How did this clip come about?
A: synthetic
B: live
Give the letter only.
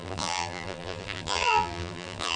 A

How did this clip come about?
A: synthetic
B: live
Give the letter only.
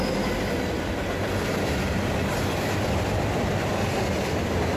B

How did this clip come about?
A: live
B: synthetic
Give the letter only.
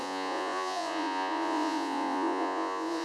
B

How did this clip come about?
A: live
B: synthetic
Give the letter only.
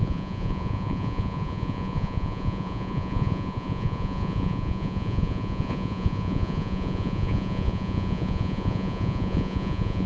B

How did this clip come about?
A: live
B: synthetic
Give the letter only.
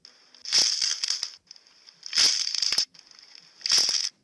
A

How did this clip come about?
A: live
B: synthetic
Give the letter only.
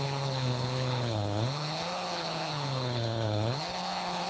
B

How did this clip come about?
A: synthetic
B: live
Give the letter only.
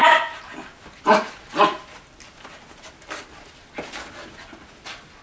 B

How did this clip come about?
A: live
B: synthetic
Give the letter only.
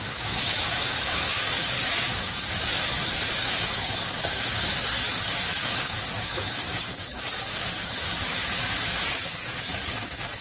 B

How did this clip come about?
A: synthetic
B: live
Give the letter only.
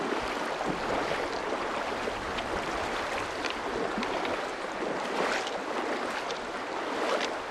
B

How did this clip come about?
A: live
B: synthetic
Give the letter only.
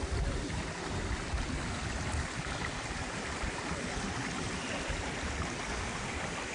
A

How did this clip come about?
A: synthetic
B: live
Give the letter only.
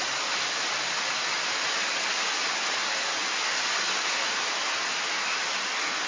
B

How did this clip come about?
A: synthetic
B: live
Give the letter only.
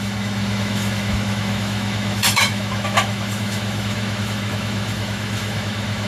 A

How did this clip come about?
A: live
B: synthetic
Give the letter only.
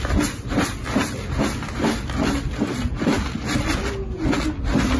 A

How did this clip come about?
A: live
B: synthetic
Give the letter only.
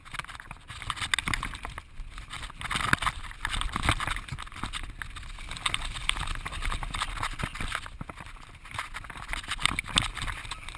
A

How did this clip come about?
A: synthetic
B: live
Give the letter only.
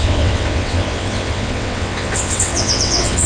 A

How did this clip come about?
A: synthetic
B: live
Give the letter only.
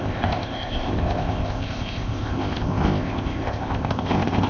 A